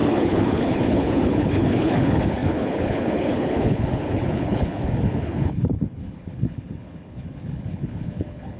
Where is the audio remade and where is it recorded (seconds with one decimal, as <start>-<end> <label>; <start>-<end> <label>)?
0.0-8.6 remade